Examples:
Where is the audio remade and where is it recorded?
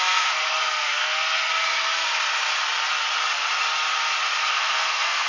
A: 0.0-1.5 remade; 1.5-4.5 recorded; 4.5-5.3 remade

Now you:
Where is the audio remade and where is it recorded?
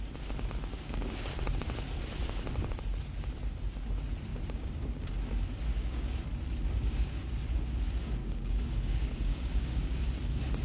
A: 0.0-0.7 recorded; 0.7-1.3 remade; 1.3-4.3 recorded; 4.3-5.1 remade; 5.1-5.7 recorded; 5.7-6.2 remade; 6.2-8.2 recorded; 8.2-10.0 remade; 10.0-10.6 recorded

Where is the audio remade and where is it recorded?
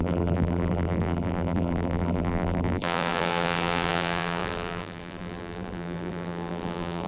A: 0.0-7.1 remade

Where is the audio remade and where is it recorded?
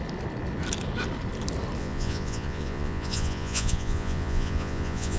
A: 0.0-1.8 recorded; 1.8-5.2 remade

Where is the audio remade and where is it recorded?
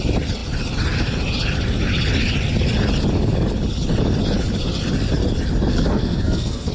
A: 0.0-5.7 recorded; 5.7-6.7 remade